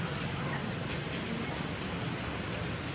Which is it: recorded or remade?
recorded